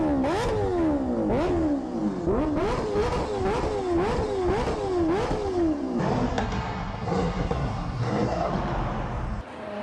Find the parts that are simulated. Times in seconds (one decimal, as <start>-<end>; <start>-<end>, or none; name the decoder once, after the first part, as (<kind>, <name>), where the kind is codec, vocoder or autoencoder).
6.3-8.5 (codec, SNAC)